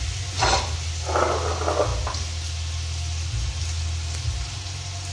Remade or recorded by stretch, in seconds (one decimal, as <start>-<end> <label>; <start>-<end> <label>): 0.0-5.1 recorded